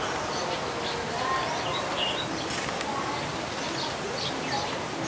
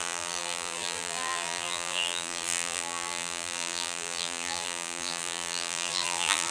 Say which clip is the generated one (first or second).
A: second